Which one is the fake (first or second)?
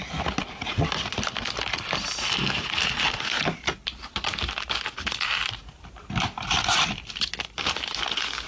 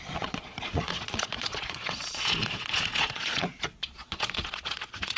second